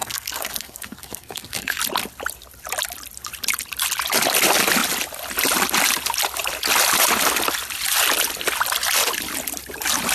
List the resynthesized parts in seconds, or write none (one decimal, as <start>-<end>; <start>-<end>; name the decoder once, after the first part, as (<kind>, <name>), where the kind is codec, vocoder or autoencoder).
0.0-1.8 (codec, SNAC)